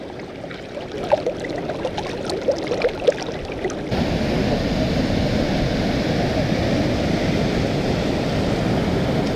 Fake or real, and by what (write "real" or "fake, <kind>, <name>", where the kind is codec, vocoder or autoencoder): real